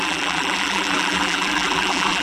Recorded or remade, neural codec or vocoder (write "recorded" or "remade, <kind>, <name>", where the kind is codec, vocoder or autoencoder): remade, vocoder, BigVGAN v2